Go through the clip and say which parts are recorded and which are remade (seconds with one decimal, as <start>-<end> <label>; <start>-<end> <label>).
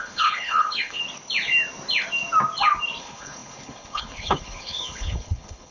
0.0-1.0 remade; 1.0-3.0 recorded; 3.0-5.7 remade